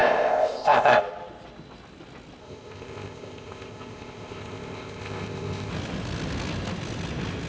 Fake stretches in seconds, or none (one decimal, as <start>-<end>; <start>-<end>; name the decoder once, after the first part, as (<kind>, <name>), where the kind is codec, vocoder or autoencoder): 0.0-1.0 (codec, ZipCodec); 2.4-5.7

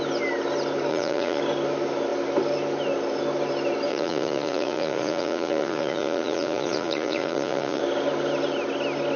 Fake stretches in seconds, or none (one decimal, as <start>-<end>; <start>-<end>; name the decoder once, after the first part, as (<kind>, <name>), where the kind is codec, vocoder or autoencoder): 0.9-1.4 (vocoder, Vocos); 3.9-7.8

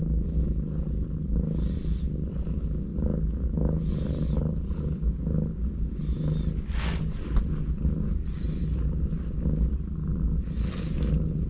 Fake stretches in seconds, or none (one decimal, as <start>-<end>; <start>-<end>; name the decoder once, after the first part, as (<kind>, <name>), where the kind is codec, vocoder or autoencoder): none

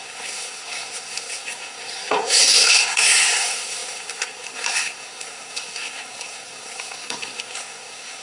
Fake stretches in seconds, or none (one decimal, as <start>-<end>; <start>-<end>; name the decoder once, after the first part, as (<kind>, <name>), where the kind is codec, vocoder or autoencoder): 0.0-8.2 (codec, SNAC)

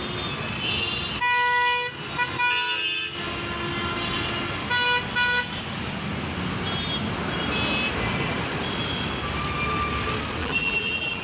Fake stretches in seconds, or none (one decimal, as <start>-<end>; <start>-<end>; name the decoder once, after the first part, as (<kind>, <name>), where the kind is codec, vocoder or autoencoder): 10.4-11.2 (vocoder, BigVGAN v2)

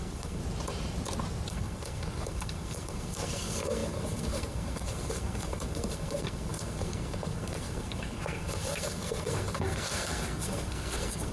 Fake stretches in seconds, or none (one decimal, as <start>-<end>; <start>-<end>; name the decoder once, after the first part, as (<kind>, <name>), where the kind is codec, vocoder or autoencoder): 0.0-0.4 (codec, SNAC); 1.5-11.3